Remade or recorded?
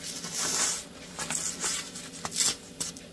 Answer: recorded